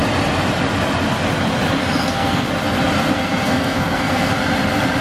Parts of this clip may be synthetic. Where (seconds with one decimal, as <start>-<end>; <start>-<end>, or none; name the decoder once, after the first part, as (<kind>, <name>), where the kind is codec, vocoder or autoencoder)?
1.8-2.5 (codec, SNAC); 3.1-4.3